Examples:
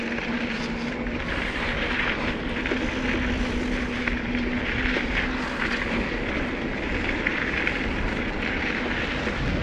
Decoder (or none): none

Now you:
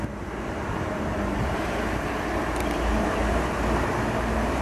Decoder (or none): vocoder, BigVGAN v2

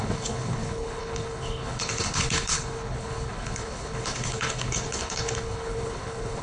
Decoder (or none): codec, HILCodec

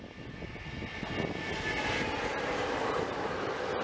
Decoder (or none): none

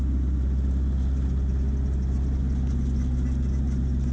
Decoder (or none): none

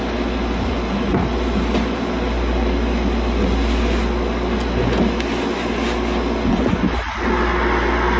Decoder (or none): none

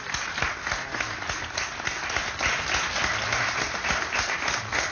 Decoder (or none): none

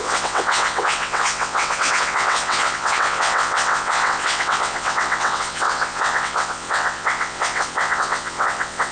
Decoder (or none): vocoder, WaveNeXt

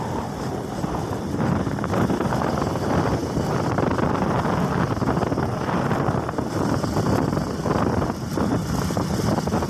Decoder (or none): none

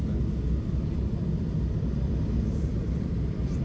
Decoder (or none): vocoder, BigVGAN v2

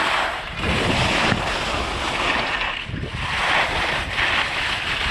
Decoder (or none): none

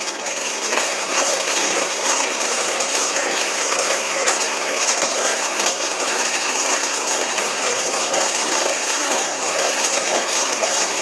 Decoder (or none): codec, SNAC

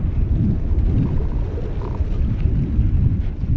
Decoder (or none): none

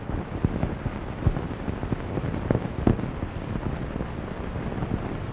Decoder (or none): none